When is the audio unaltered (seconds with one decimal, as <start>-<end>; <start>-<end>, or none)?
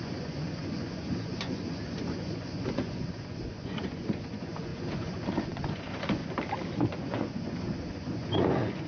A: 6.2-7.0